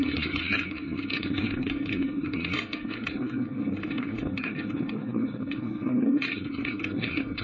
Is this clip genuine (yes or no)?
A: no